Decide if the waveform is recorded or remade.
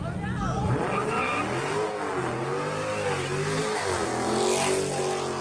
recorded